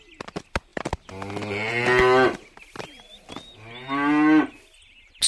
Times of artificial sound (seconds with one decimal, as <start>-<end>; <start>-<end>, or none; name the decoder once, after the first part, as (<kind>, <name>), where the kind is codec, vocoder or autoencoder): none